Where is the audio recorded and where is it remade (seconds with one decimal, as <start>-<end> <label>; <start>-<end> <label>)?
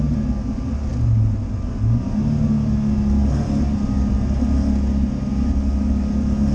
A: 0.0-6.5 recorded